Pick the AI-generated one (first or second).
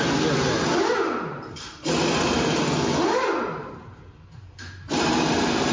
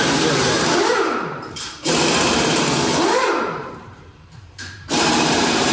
second